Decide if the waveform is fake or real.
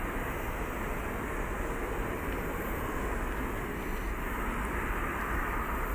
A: real